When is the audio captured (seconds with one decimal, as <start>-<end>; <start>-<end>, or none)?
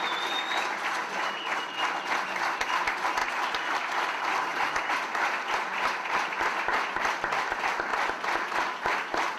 0.0-3.2; 3.9-9.4